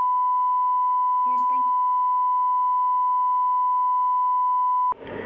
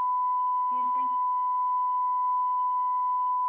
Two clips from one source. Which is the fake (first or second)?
second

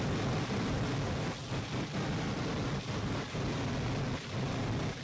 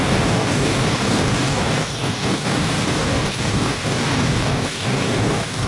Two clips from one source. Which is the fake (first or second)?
second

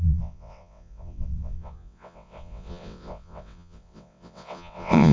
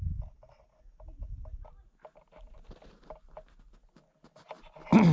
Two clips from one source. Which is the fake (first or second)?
first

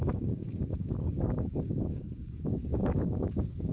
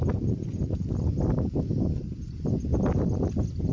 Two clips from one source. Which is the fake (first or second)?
first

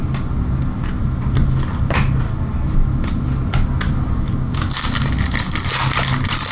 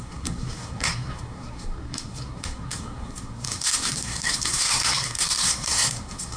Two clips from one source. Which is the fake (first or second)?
second